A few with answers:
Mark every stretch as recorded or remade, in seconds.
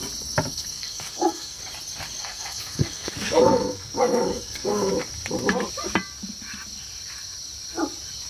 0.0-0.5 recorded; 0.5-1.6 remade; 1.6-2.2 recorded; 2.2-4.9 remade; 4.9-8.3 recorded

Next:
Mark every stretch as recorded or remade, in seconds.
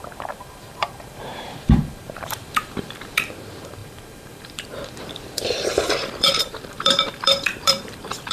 0.0-8.3 remade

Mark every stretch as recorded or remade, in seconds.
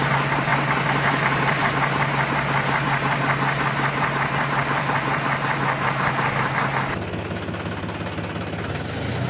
0.0-9.3 recorded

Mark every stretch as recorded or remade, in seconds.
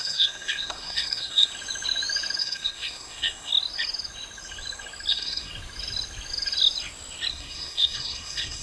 0.0-1.5 remade; 1.5-2.4 recorded; 2.4-3.5 remade; 3.5-5.1 recorded; 5.1-5.5 remade; 5.5-7.3 recorded; 7.3-8.6 remade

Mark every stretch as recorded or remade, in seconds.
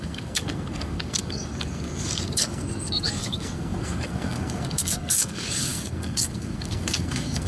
0.0-7.5 remade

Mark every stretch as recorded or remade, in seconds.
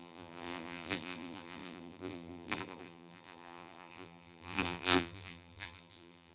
0.0-6.3 remade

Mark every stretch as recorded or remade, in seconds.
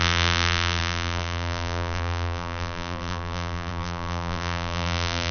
0.0-5.3 remade